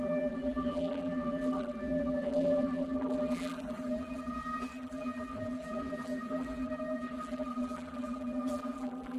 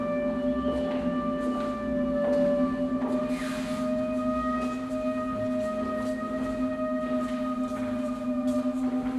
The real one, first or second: second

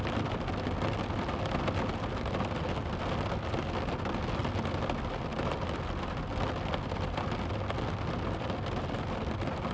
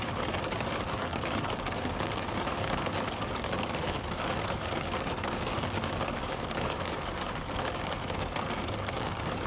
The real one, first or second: first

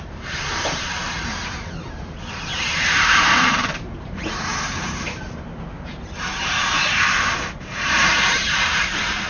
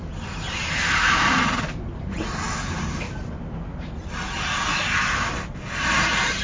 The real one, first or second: second